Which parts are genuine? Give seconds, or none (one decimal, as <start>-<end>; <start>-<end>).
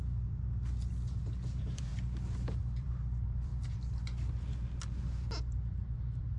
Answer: 1.9-2.6; 3.5-6.4